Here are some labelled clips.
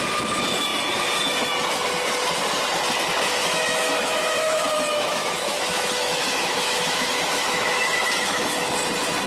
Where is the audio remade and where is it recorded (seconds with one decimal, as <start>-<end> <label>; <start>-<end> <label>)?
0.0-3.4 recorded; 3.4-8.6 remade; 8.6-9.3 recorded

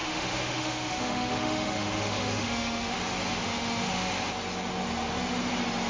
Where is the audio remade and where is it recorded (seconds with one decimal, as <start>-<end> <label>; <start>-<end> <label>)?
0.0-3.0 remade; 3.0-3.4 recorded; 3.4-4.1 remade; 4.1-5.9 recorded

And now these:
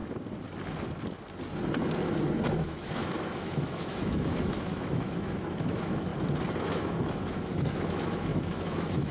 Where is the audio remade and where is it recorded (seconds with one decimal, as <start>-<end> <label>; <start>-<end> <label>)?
0.0-2.5 recorded; 2.5-6.1 remade; 6.1-6.6 recorded; 6.6-9.1 remade

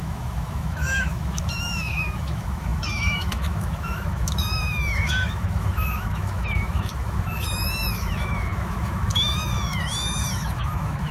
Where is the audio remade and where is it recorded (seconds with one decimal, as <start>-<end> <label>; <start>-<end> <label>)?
0.0-11.1 remade

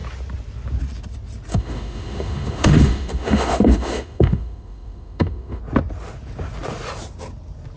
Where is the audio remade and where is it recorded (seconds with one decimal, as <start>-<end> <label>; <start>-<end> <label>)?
0.0-1.5 recorded; 1.5-5.6 remade; 5.6-7.8 recorded

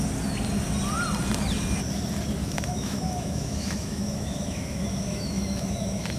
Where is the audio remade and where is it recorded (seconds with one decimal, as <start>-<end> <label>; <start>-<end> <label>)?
0.0-2.4 recorded; 2.4-6.2 remade

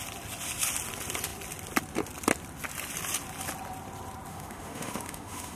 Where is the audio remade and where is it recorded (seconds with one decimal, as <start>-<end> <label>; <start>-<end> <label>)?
0.0-4.3 recorded; 4.3-5.6 remade

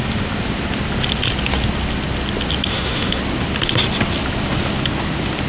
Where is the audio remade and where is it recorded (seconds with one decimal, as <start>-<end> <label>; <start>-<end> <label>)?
0.0-2.7 recorded; 2.7-3.2 remade; 3.2-5.5 recorded